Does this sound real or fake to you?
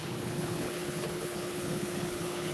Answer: fake